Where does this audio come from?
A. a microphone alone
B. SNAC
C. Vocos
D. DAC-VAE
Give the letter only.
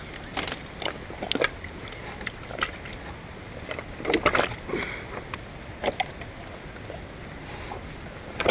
A